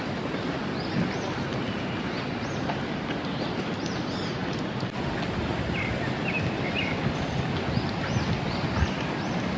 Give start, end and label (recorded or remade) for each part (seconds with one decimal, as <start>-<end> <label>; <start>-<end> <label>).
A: 0.0-9.6 recorded